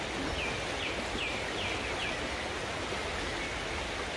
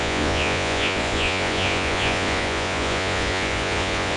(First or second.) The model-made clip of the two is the second